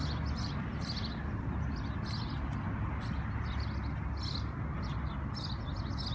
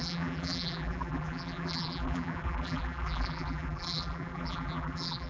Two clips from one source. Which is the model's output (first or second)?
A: second